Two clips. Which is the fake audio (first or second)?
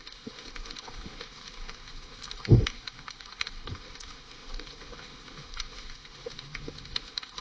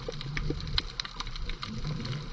first